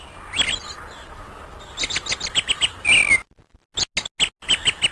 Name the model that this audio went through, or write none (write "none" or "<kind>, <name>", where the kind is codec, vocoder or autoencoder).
none